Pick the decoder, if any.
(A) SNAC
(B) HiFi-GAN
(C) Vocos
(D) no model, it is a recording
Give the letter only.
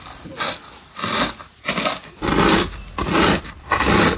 D